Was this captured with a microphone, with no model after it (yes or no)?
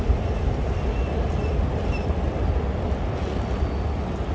yes